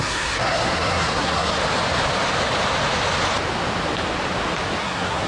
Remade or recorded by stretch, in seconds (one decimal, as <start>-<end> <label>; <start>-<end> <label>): 0.0-1.6 remade; 1.6-4.8 recorded; 4.8-5.3 remade